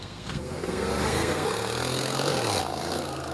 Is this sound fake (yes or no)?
yes